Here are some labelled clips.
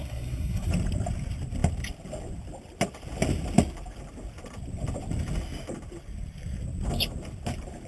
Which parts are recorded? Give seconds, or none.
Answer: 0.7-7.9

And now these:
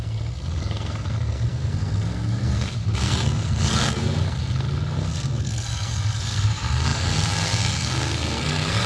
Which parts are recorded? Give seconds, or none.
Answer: none

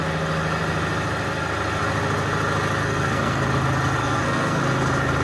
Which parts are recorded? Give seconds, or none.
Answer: 0.0-2.8; 3.4-4.0; 4.6-5.2

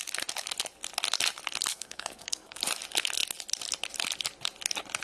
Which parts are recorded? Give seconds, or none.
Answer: 0.0-1.7; 2.6-5.0

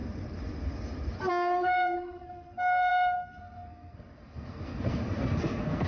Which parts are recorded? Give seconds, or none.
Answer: 0.0-1.3